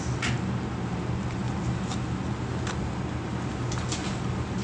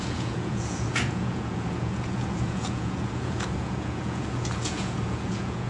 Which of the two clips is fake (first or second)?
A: second